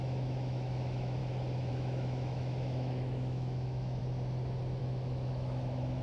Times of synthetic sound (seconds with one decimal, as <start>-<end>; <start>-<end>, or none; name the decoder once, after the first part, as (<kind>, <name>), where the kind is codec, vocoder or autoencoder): 0.0-1.2 (autoencoder, DAC-VAE); 1.7-4.0; 4.8-6.0